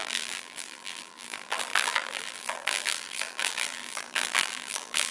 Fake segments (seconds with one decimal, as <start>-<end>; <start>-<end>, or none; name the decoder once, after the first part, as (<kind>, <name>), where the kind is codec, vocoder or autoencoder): 0.0-5.1 (vocoder, BigVGAN v2)